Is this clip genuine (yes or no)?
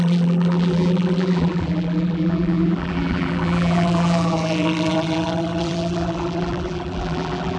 no